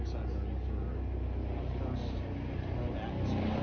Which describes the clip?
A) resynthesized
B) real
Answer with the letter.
B